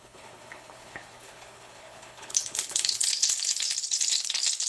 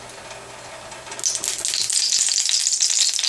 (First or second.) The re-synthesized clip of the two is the first